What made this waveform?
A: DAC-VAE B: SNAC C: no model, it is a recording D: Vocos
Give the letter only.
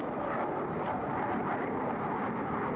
C